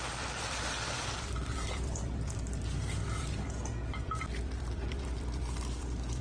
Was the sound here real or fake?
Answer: fake